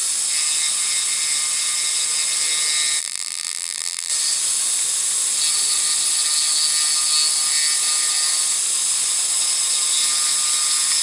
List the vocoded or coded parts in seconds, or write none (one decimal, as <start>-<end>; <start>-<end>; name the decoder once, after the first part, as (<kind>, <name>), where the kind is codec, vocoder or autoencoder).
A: 3.0-4.1 (vocoder, BigVGAN v2)